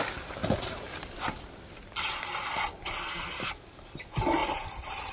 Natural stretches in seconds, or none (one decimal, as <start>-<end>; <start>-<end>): 0.0-0.4; 3.5-4.4